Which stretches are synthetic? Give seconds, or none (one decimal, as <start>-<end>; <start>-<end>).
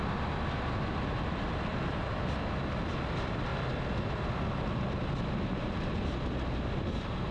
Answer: none